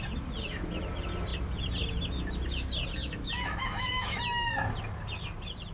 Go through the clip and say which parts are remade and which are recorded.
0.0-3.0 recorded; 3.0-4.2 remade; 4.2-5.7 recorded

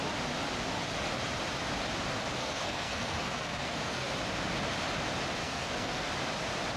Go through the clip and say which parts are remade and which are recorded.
0.0-2.4 recorded; 2.4-4.1 remade; 4.1-5.4 recorded; 5.4-6.1 remade; 6.1-6.8 recorded

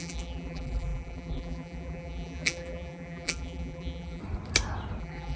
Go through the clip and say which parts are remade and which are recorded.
0.0-4.2 remade; 4.2-5.0 recorded; 5.0-5.4 remade

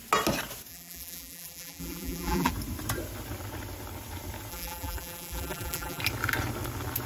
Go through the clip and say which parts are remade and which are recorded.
0.0-0.7 recorded; 0.7-2.5 remade; 2.5-4.5 recorded; 4.5-6.0 remade; 6.0-7.1 recorded